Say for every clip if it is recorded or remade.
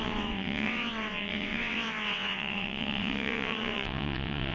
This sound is remade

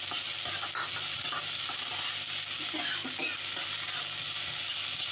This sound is recorded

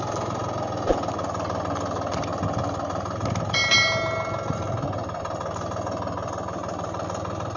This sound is recorded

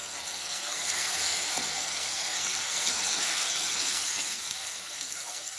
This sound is remade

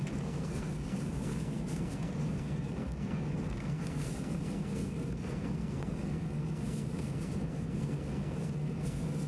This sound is remade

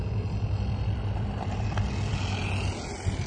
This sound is recorded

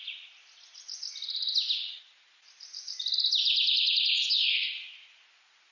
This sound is recorded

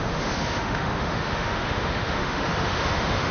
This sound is remade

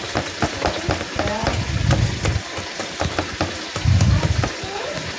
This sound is recorded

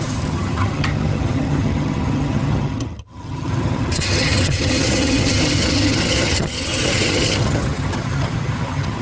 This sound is remade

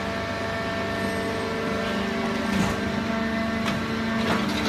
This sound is recorded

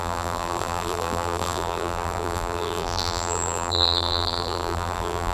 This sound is remade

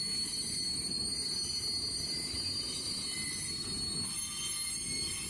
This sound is recorded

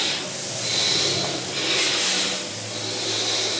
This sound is recorded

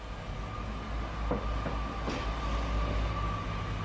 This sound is recorded